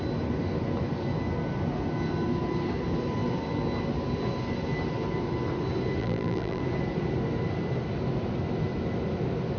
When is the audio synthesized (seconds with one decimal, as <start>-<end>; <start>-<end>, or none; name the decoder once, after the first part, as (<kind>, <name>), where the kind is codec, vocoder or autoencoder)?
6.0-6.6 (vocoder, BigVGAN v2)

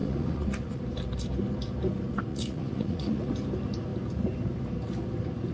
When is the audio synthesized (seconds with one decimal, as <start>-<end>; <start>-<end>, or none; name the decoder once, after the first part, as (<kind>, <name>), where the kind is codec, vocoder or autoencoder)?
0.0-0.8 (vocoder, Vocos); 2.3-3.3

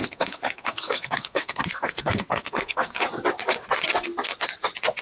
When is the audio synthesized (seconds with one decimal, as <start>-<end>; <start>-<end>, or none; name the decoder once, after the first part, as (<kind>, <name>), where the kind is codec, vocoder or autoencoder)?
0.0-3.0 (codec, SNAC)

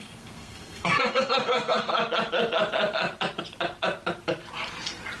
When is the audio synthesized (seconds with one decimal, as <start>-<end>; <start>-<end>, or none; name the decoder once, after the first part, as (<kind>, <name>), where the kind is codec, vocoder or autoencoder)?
0.0-1.9 (codec, SNAC)

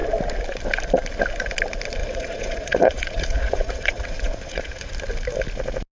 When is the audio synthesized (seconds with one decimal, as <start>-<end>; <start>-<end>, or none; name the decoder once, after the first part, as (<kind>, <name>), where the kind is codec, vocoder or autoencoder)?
2.0-4.9 (vocoder, Vocos)

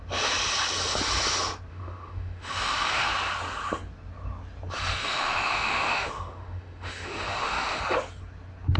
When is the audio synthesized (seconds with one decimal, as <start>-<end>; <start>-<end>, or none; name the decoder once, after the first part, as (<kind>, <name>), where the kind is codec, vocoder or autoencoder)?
1.7-3.1 (autoencoder, DAC-VAE); 5.0-7.8

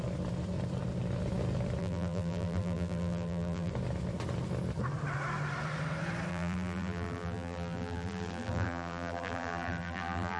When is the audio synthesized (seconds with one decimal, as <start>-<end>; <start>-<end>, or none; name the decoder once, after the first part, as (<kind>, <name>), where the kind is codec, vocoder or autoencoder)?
1.8-3.7 (vocoder, BigVGAN v2); 6.3-10.4